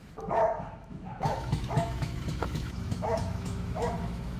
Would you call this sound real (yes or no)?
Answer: no